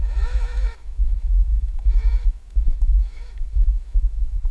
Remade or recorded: remade